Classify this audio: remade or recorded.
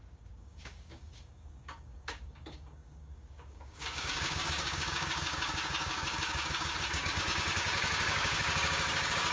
remade